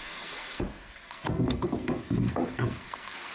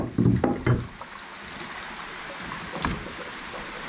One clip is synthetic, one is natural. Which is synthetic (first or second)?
first